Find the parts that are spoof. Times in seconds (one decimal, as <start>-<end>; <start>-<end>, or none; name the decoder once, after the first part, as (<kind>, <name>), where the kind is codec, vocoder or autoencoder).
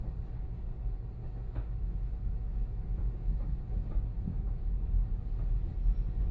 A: 1.2-3.6 (autoencoder, DAC-VAE); 4.1-4.8